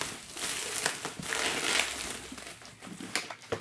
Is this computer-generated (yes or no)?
no